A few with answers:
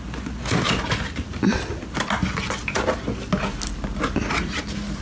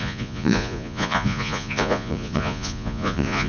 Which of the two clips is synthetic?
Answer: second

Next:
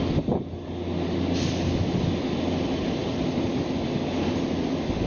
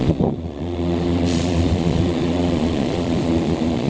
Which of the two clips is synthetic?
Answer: second